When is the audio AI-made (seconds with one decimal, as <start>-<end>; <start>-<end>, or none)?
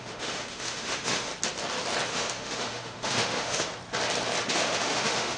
0.0-1.3; 2.1-3.7; 4.5-5.4